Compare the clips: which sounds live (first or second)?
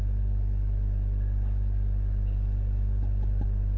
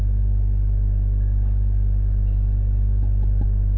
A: second